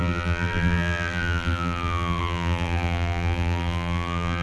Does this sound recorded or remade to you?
remade